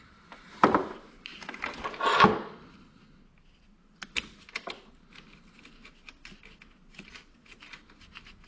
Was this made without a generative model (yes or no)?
yes